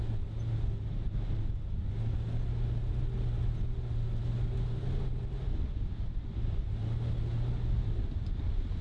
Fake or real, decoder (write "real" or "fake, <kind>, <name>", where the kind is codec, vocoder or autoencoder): real